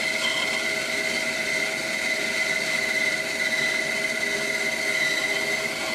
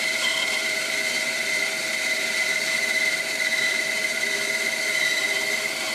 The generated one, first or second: second